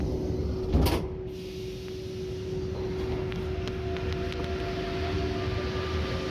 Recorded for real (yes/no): yes